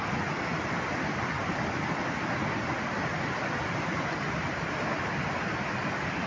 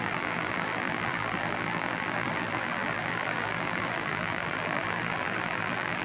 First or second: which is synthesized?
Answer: second